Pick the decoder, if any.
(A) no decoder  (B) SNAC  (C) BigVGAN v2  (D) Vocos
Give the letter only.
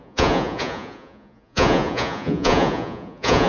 D